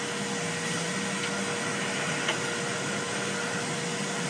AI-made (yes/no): no